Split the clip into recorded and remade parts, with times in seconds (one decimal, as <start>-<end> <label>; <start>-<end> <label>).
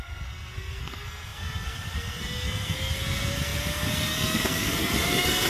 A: 0.0-5.5 remade